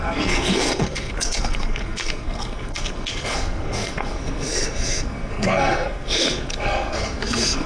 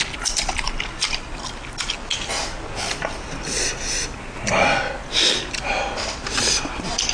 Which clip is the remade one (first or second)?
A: first